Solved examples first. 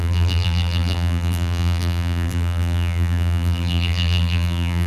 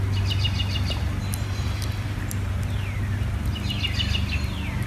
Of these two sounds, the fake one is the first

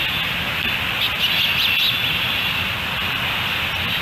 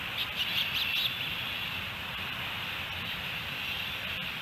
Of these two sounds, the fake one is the second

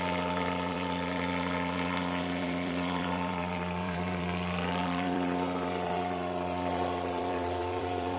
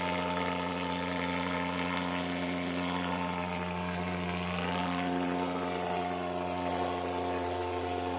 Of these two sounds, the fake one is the first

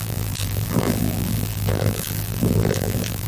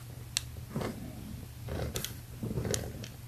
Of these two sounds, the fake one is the first